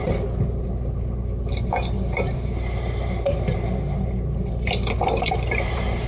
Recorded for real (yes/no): no